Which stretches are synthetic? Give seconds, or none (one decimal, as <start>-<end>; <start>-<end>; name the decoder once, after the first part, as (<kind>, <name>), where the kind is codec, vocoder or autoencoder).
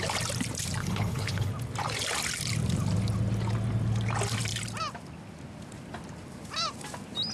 0.8-1.5 (codec, HILCodec)